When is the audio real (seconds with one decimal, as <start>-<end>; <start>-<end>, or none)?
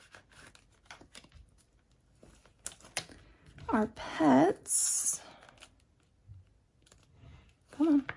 0.0-8.2